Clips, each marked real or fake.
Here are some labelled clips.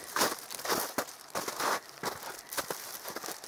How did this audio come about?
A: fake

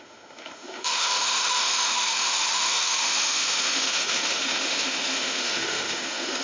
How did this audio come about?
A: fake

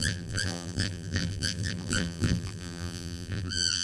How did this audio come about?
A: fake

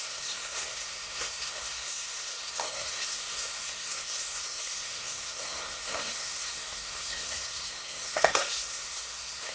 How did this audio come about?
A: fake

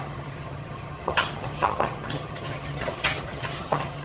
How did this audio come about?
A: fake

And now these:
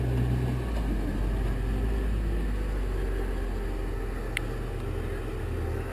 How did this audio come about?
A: real